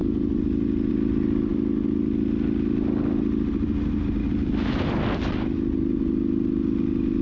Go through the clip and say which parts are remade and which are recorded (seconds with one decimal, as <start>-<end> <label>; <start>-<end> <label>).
0.0-7.2 recorded